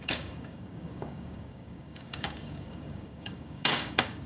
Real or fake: fake